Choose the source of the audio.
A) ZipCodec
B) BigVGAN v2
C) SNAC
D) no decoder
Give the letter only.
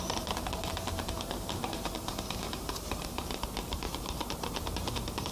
B